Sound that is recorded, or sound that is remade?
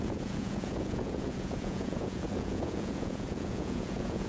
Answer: remade